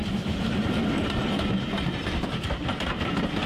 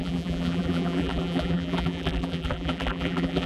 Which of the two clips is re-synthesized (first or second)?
second